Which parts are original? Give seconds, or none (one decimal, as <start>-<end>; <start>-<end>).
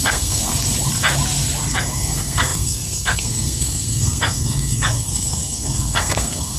0.5-1.7